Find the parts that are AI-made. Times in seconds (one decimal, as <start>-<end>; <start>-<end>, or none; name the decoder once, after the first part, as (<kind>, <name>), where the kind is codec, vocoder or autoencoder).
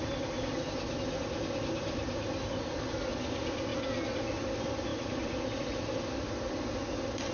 none